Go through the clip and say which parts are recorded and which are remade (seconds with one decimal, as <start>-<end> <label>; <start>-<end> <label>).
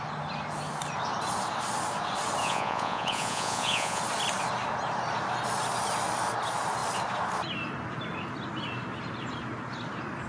0.0-2.4 recorded; 2.4-4.0 remade; 4.0-10.3 recorded